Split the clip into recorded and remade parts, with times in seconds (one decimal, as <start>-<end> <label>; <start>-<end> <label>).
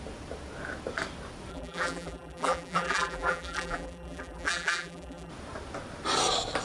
0.0-1.5 recorded; 1.5-5.3 remade; 5.3-6.6 recorded